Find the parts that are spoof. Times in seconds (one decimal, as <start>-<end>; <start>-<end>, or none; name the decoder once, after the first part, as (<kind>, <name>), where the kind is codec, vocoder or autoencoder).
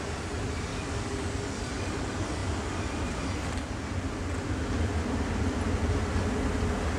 0.7-1.3 (codec, DAC)